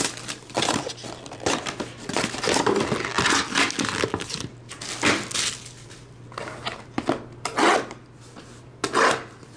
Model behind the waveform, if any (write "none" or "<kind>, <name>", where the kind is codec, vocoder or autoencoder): none